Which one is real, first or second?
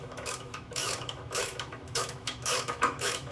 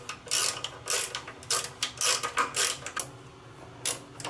second